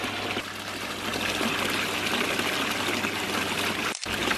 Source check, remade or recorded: recorded